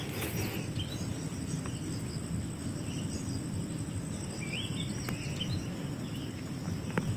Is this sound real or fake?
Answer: real